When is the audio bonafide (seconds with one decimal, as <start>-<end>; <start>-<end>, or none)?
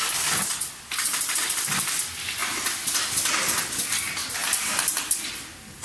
0.0-1.1; 1.7-4.4; 5.0-5.8